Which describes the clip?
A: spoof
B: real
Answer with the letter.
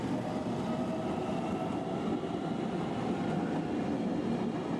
B